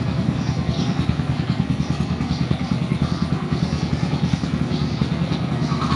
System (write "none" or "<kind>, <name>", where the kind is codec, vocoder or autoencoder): codec, SNAC